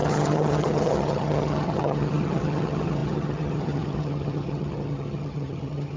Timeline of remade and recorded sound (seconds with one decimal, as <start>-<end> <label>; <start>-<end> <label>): 0.0-6.0 remade